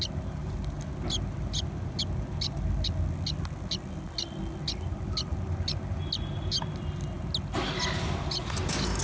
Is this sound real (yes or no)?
yes